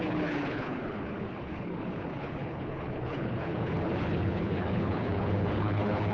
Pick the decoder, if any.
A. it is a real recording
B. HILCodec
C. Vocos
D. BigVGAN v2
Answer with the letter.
B